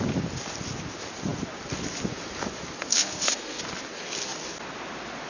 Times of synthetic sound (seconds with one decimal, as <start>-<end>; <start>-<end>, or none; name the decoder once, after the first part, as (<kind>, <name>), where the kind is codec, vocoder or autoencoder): 2.9-3.6 (codec, SNAC)